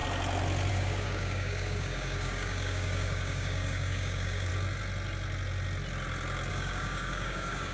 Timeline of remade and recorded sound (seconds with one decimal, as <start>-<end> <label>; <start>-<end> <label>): 0.0-0.7 recorded; 0.7-4.5 remade; 4.5-6.5 recorded; 6.5-7.7 remade